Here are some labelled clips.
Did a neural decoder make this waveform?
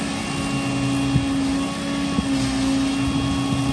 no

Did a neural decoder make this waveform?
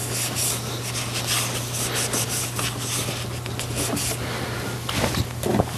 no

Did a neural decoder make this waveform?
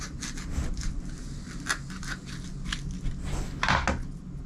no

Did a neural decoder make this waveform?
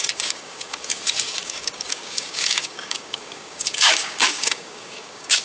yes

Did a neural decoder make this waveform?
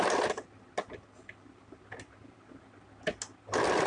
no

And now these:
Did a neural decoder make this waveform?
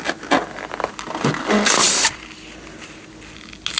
no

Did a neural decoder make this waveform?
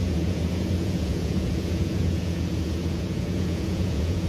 yes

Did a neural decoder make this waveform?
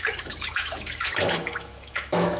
yes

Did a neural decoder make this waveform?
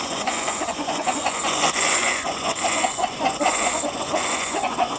yes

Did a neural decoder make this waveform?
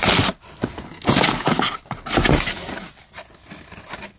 no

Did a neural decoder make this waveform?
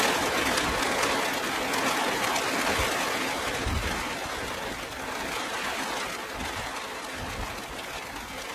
no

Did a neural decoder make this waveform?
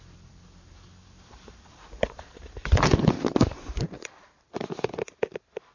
yes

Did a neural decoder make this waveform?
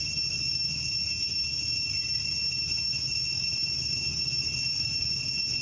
no